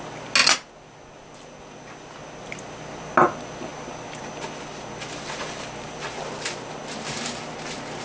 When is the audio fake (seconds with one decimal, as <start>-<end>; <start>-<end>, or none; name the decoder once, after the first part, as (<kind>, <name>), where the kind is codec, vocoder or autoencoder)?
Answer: none